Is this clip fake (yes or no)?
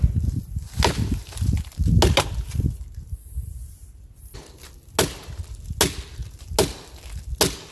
no